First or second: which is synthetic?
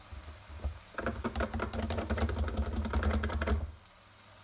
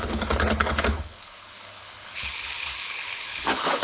second